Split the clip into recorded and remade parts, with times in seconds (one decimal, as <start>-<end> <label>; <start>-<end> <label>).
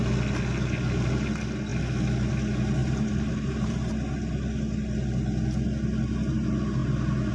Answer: 0.0-2.8 recorded; 2.8-3.9 remade; 3.9-7.3 recorded